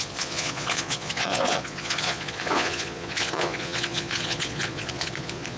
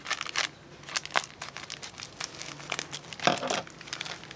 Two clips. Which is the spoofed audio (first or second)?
first